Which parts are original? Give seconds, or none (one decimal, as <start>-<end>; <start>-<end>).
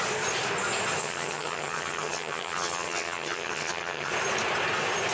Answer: 0.0-1.0; 4.1-5.1